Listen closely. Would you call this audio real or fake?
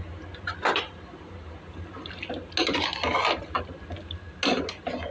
real